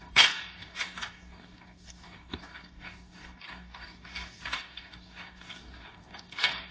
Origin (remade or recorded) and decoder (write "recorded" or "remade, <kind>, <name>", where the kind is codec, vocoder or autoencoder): remade, codec, DAC